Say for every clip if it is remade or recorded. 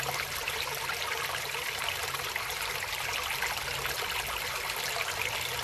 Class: recorded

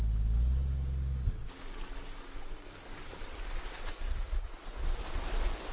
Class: recorded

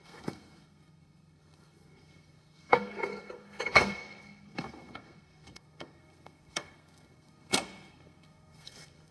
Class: remade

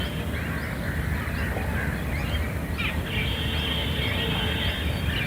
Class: recorded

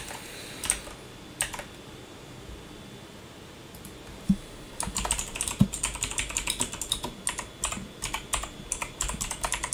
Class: recorded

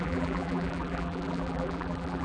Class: remade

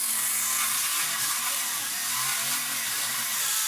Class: remade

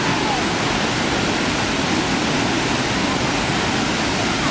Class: recorded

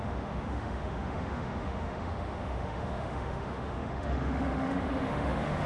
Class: remade